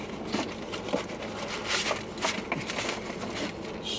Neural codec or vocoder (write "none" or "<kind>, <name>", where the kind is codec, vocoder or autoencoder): none